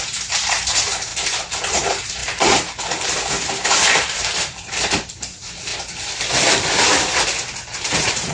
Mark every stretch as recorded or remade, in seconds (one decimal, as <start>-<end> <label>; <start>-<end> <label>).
0.0-1.1 remade; 1.1-1.7 recorded; 1.7-5.7 remade; 5.7-7.9 recorded; 7.9-8.3 remade